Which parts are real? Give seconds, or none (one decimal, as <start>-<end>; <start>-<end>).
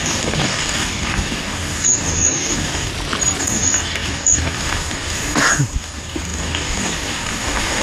2.9-3.4